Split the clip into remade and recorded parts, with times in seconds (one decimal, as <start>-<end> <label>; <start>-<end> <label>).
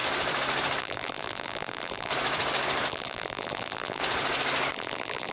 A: 0.0-0.8 recorded; 0.8-2.1 remade; 2.1-2.9 recorded; 2.9-4.0 remade; 4.0-4.7 recorded; 4.7-5.3 remade